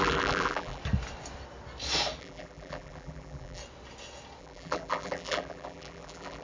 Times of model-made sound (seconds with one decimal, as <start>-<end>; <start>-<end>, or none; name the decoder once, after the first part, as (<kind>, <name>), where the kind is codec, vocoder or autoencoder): 0.0-0.8 (vocoder, BigVGAN v2); 2.2-3.6; 4.4-6.4